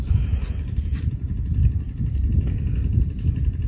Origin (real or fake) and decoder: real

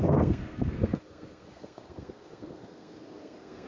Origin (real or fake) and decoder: fake, codec, SNAC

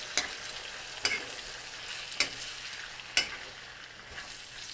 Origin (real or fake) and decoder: real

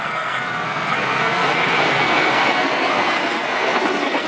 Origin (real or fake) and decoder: fake, codec, SNAC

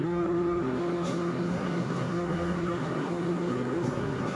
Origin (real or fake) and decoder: fake, codec, SNAC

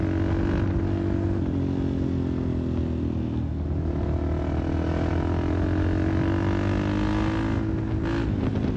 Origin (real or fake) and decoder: real